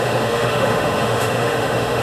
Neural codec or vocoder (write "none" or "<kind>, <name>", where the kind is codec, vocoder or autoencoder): autoencoder, DAC-VAE